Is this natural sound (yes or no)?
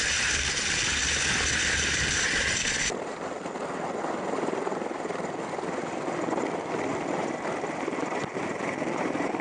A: yes